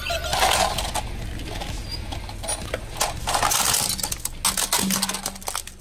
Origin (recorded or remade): recorded